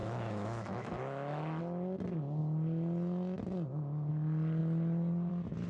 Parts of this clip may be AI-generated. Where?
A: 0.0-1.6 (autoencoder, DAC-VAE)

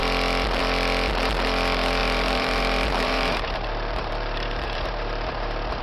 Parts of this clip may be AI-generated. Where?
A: 2.0-5.8 (vocoder, BigVGAN v2)

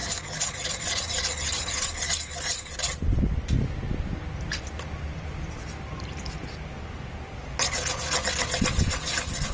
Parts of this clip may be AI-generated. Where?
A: none

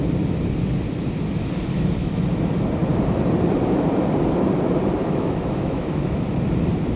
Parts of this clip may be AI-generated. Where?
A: 1.7-2.2 (autoencoder, DAC-VAE); 5.0-6.3

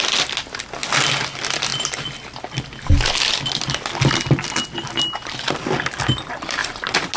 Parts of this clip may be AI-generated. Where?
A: none

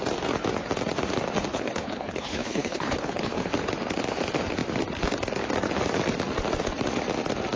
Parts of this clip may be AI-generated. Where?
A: 1.5-3.5 (codec, HILCodec)